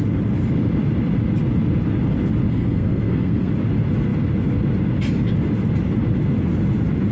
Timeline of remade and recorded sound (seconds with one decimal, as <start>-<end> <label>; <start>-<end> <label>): 0.0-2.5 recorded; 2.5-3.5 remade; 3.5-7.1 recorded